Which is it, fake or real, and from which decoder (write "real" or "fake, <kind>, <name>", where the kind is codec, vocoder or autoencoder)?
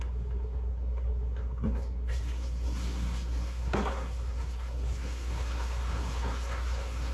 fake, codec, SNAC